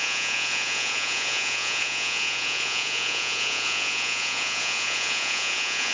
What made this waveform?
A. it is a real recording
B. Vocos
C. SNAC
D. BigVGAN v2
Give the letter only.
B